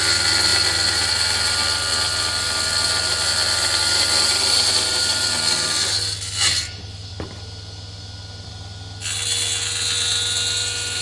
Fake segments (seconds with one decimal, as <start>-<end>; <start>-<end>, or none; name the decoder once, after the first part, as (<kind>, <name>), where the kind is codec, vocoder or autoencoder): none